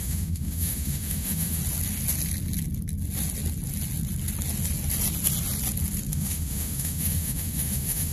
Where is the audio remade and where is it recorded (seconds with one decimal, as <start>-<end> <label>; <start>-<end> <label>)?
0.0-1.6 remade; 1.6-6.1 recorded; 6.1-8.1 remade